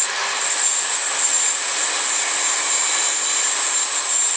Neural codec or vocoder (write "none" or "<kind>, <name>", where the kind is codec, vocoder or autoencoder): none